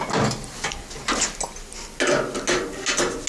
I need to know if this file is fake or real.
real